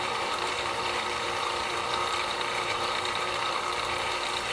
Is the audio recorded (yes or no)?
no